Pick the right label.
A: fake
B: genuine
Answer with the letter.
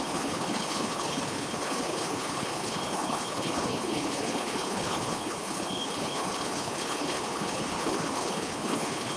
A